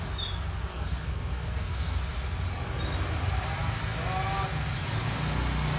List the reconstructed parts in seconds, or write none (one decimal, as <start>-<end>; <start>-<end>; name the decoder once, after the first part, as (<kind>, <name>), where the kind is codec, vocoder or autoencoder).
0.7-2.0 (codec, SNAC)